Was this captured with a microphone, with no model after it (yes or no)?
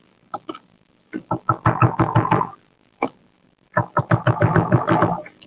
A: no